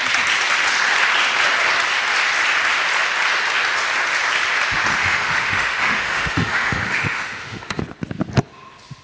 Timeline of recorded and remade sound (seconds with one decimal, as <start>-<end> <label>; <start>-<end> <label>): 0.0-4.9 recorded; 4.9-7.8 remade; 7.8-9.0 recorded

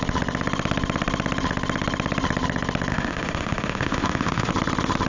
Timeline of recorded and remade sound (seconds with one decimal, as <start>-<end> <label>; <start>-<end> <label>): 0.0-2.9 recorded; 2.9-4.5 remade; 4.5-5.1 recorded

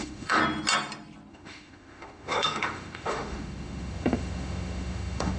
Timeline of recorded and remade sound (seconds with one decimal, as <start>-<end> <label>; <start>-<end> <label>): 0.0-0.4 remade; 0.4-1.3 recorded; 1.3-5.4 remade